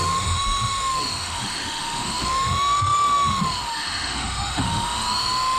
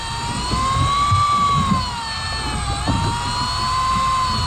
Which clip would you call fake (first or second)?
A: first